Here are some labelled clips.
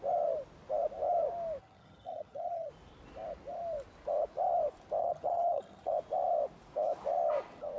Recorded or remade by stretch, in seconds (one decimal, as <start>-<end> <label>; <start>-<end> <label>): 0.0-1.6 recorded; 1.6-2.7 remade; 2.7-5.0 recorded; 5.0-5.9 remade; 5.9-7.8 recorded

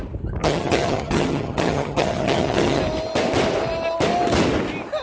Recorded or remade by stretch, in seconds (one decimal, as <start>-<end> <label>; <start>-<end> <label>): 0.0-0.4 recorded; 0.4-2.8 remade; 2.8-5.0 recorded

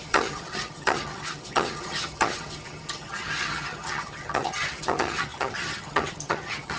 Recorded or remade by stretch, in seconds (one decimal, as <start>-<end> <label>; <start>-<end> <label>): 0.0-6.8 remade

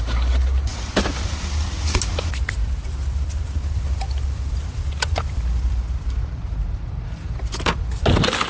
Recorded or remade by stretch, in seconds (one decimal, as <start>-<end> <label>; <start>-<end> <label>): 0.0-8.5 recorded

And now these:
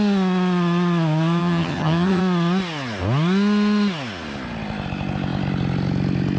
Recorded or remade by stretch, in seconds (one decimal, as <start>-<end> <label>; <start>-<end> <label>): 0.0-1.4 recorded; 1.4-2.2 remade; 2.2-6.4 recorded

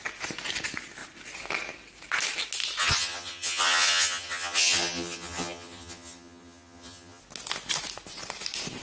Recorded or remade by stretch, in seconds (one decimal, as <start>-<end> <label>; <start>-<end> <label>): 0.0-2.8 recorded; 2.8-7.2 remade; 7.2-8.8 recorded

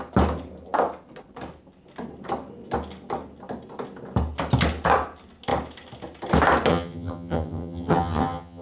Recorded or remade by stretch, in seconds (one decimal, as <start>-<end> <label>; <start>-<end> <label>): 0.0-6.7 recorded; 6.7-8.6 remade

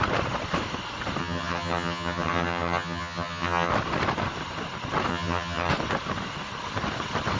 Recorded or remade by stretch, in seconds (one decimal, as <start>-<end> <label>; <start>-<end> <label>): 0.0-1.2 recorded; 1.2-3.7 remade; 3.7-5.1 recorded; 5.1-5.7 remade; 5.7-7.4 recorded